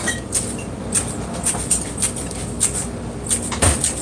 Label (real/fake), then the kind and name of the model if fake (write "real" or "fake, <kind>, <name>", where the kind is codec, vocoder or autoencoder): real